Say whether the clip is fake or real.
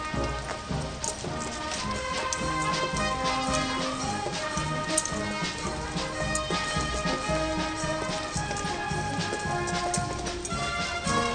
real